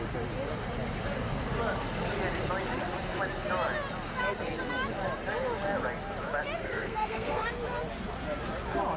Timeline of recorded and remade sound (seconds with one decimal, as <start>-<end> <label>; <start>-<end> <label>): 0.0-6.6 recorded; 6.6-7.5 remade; 7.5-9.0 recorded